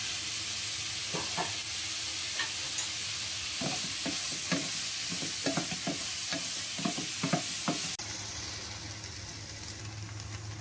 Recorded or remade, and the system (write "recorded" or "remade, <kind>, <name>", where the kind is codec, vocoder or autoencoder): recorded